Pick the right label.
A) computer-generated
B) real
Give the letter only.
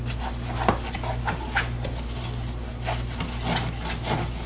B